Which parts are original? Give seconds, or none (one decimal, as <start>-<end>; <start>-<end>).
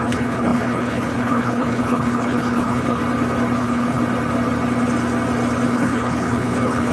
3.0-3.6; 4.0-5.7